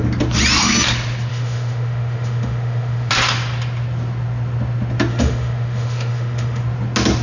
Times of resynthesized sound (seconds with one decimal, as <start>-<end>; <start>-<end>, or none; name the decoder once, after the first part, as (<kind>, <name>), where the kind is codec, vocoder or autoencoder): 1.3-3.1 (autoencoder, DAC-VAE); 5.1-6.6